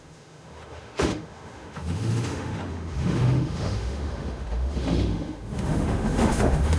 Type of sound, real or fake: fake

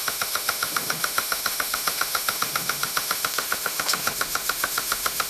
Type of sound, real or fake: fake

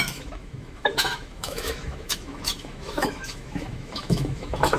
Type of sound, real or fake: fake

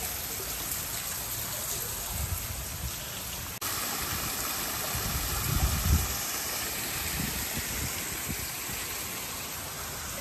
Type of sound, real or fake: real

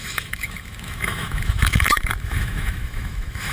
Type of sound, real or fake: fake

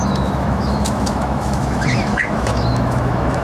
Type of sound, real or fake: fake